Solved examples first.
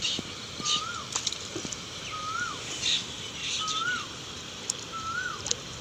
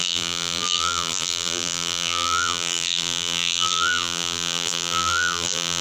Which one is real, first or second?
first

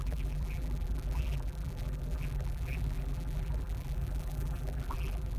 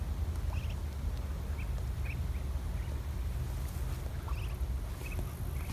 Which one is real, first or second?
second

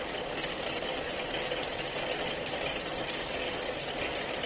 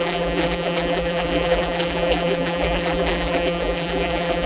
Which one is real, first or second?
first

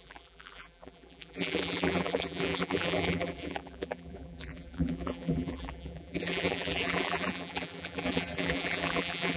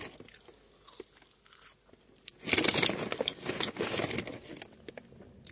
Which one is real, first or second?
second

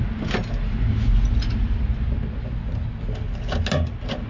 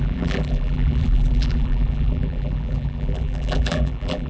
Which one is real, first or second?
first